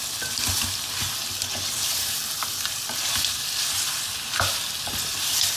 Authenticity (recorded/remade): recorded